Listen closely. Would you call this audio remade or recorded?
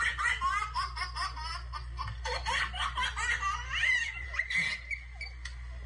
recorded